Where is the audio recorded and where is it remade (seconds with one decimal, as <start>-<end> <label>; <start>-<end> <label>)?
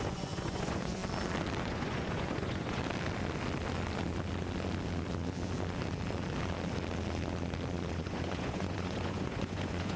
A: 0.0-1.0 remade; 1.0-1.6 recorded; 1.6-2.8 remade; 2.8-7.9 recorded; 7.9-10.0 remade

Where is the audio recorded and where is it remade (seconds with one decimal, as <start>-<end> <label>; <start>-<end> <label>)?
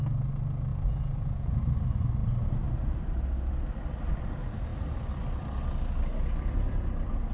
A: 0.0-0.7 recorded; 0.7-1.6 remade; 1.6-7.3 recorded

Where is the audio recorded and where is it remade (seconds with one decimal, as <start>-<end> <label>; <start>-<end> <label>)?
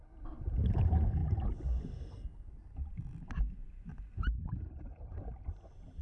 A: 0.0-6.0 recorded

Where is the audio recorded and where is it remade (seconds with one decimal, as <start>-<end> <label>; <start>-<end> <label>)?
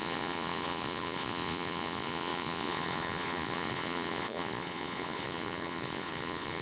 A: 0.0-6.6 remade